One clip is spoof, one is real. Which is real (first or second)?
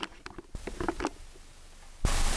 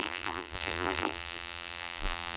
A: first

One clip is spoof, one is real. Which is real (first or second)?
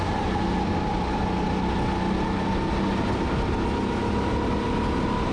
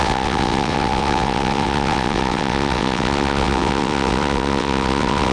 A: first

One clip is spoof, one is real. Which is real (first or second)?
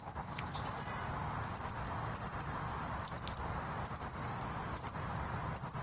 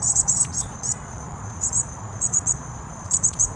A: first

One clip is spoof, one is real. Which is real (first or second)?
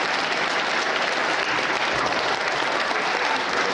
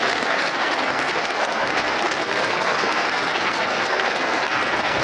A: first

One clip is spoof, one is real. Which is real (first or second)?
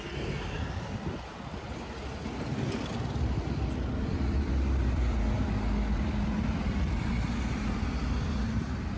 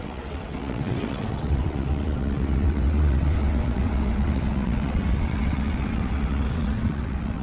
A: first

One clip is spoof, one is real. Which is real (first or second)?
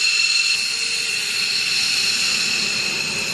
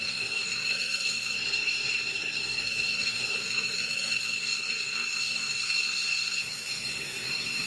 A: first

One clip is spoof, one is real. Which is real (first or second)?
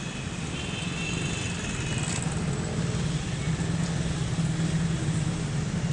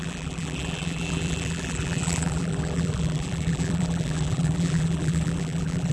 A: first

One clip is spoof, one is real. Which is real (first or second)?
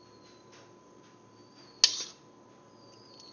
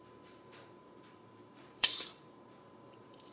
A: first